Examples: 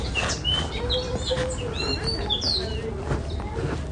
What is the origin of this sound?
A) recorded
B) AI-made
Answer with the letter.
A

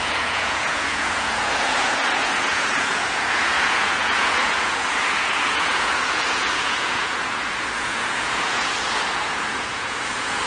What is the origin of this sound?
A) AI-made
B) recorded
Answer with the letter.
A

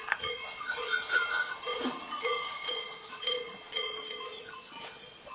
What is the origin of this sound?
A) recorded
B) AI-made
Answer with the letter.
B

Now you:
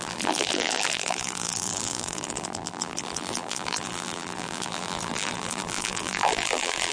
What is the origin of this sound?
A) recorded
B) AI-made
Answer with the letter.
B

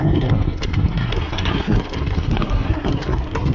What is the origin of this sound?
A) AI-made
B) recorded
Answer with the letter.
A